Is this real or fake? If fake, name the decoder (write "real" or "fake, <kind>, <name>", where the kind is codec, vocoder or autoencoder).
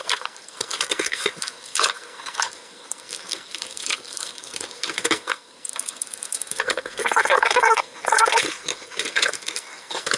fake, codec, SNAC